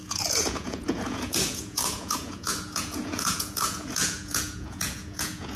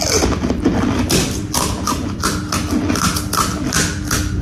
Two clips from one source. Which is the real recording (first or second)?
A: second